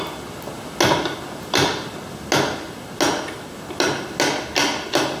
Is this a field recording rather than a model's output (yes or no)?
yes